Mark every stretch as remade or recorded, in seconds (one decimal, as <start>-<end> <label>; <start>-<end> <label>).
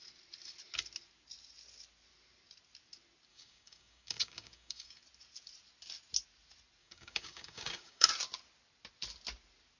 0.0-3.3 recorded; 3.3-5.0 remade; 5.0-6.8 recorded; 6.8-8.1 remade; 8.1-9.8 recorded